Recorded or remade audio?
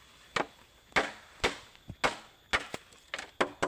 recorded